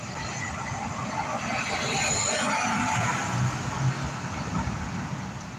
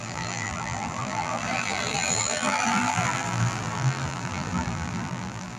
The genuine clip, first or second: first